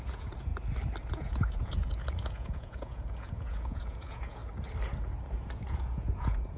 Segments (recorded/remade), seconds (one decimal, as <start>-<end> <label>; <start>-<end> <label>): 0.0-0.5 remade; 0.5-1.1 recorded; 1.1-4.4 remade; 4.4-5.3 recorded; 5.3-6.6 remade